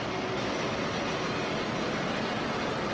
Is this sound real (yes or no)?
yes